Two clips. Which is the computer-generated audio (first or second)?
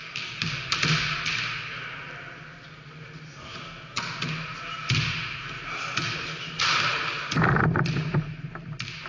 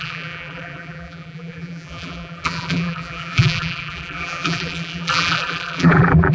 second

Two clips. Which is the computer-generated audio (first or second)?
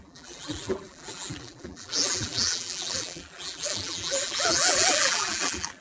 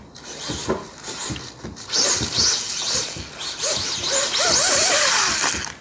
first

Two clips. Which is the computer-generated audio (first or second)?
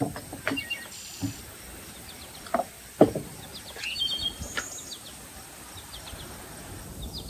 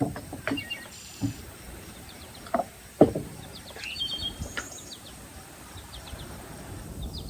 second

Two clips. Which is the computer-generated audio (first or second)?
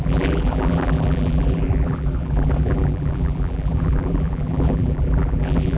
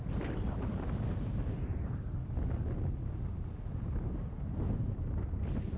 first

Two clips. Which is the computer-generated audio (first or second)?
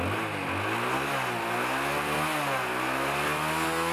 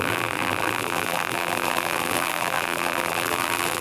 second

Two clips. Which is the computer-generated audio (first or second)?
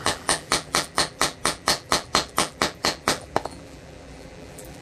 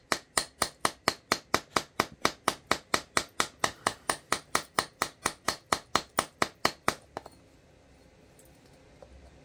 first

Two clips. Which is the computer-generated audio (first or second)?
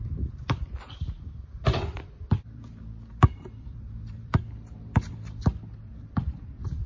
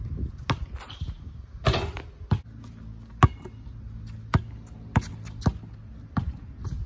first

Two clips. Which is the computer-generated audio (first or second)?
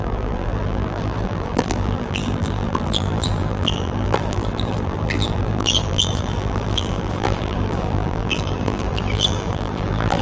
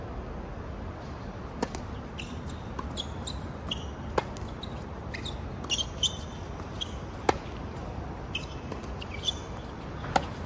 first